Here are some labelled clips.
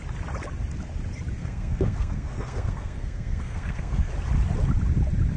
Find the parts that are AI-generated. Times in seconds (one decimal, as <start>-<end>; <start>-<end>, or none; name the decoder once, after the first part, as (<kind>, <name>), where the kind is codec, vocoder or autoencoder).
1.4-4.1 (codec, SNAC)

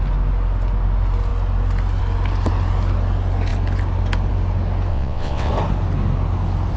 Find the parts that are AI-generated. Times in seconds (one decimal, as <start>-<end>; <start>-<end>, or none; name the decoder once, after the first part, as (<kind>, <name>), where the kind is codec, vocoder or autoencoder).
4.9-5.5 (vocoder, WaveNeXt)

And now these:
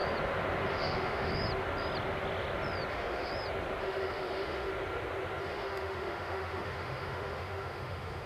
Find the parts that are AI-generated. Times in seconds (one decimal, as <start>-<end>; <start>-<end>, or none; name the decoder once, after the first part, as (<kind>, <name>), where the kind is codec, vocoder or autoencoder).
0.7-1.3 (autoencoder, DAC-VAE); 2.9-3.3; 3.8-4.7; 5.4-8.3